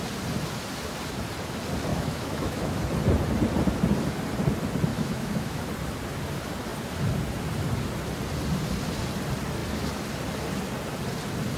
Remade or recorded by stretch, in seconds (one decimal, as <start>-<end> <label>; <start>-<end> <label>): 0.0-1.9 recorded; 1.9-2.8 remade; 2.8-4.9 recorded; 4.9-5.6 remade; 5.6-11.6 recorded